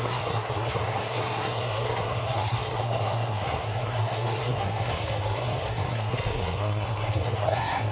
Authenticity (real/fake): fake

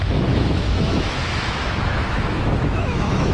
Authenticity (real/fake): fake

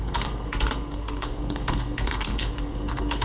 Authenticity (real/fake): fake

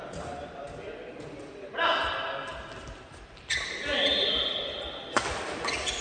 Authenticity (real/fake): real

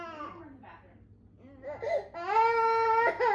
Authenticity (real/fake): real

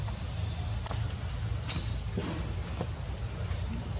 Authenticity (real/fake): real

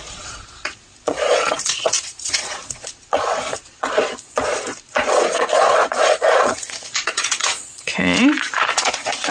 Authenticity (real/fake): fake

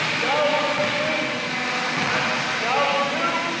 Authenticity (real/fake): real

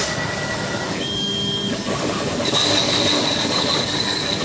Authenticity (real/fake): fake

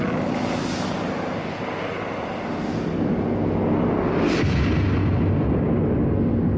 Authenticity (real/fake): real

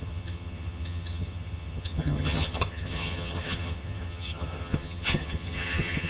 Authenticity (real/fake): fake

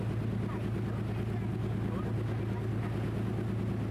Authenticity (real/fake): real